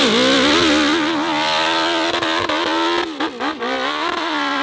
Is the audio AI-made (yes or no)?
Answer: no